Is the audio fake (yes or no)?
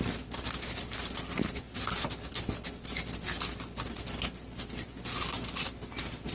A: no